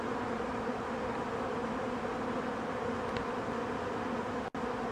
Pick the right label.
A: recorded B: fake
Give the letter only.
A